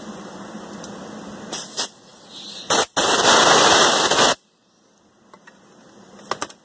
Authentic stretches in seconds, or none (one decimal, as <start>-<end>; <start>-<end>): 0.0-6.6